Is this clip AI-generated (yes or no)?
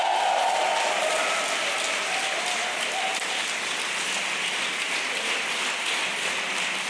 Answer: no